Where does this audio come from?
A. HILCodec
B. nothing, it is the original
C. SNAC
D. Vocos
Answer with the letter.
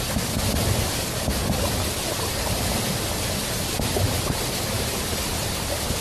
B